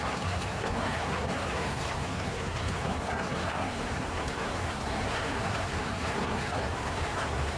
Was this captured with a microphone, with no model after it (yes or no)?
no